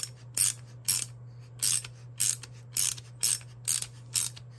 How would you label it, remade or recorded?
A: recorded